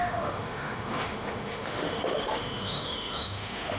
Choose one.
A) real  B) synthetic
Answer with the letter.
B